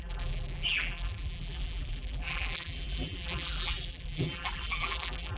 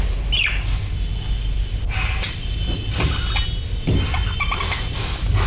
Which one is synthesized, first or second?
first